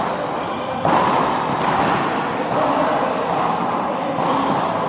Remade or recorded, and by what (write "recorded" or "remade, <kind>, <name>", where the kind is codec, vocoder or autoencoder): remade, vocoder, BigVGAN v2